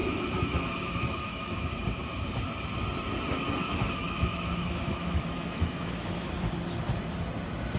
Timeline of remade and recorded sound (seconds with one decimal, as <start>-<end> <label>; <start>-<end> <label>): 0.0-1.7 remade; 1.7-3.6 recorded; 3.6-6.3 remade; 6.3-7.8 recorded